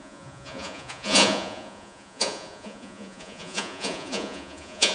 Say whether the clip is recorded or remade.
remade